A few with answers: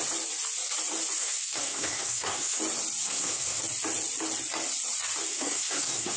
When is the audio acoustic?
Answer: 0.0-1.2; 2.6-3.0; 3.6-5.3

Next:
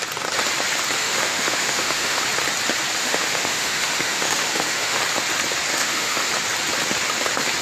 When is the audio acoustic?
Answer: 0.0-1.0; 2.2-3.0; 5.0-5.7; 6.3-7.6

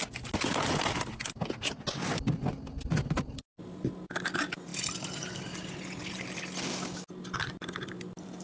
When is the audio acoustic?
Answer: 0.0-8.4

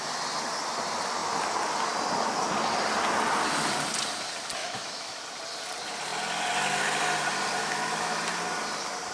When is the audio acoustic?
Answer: 0.0-4.6; 5.2-7.6; 8.2-9.1

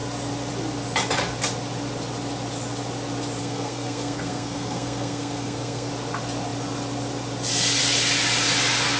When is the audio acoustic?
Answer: 0.0-3.4; 5.9-9.0

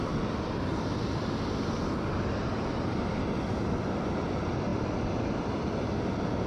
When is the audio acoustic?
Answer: 0.0-6.5

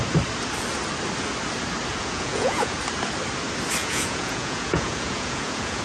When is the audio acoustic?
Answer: 0.0-1.9; 2.8-3.8

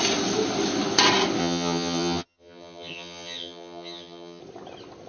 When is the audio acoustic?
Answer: 0.0-1.4; 4.4-5.1